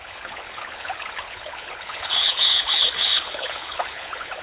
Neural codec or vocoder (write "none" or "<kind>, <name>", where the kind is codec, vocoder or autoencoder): codec, HILCodec